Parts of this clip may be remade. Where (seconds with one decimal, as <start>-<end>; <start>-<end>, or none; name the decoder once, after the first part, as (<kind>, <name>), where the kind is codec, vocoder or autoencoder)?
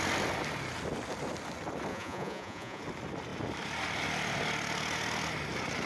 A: 1.9-2.8 (vocoder, Vocos)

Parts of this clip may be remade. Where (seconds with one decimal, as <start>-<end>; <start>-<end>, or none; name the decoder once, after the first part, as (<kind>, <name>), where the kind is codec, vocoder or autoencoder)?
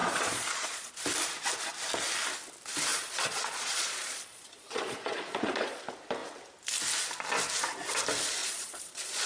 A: 0.0-0.9 (vocoder, Vocos); 2.9-5.8; 8.4-9.3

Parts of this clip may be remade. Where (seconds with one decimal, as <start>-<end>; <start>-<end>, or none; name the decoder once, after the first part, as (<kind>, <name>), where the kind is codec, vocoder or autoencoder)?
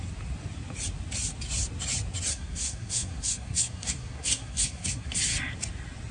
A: 2.3-5.2 (codec, SNAC)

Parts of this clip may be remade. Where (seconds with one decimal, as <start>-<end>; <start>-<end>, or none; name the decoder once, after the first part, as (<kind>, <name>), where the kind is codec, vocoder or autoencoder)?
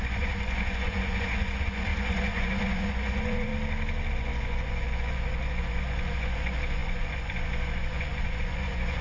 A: 0.0-3.5 (vocoder, Vocos); 4.1-9.0